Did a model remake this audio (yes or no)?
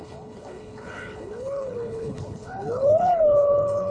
yes